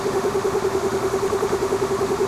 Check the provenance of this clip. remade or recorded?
remade